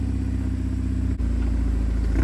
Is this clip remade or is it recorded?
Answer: recorded